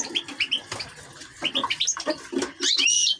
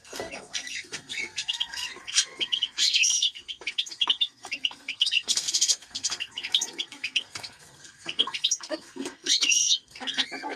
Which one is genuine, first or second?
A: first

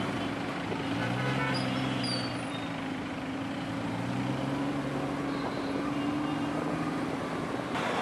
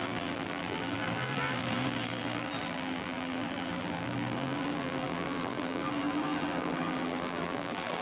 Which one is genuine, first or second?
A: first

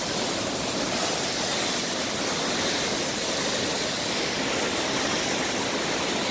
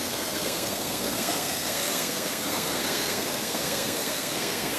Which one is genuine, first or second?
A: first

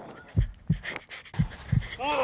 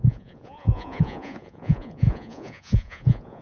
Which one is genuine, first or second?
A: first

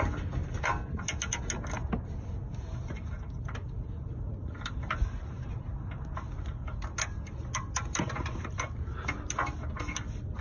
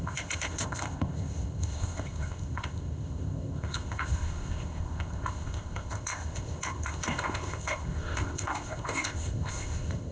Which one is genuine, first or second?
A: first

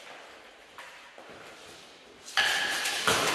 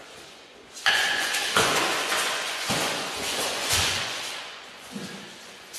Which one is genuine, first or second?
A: first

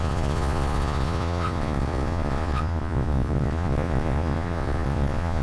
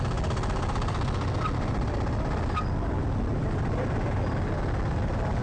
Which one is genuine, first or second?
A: second